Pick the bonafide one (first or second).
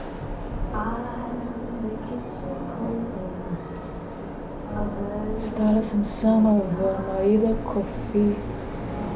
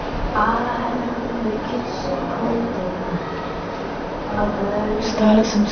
first